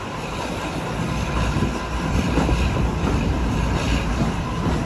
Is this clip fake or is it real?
real